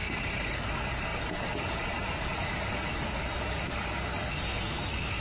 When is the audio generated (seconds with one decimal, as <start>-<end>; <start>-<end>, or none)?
0.0-0.6; 2.3-3.3